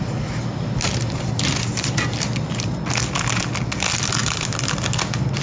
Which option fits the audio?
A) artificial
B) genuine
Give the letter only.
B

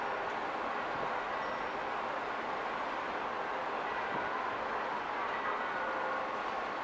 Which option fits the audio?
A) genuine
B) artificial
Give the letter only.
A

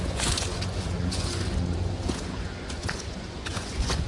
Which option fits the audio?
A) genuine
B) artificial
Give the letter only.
B